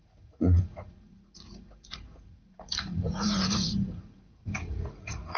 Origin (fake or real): fake